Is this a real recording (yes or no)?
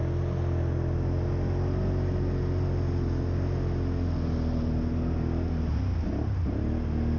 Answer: yes